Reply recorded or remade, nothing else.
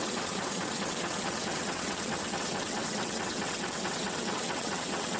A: remade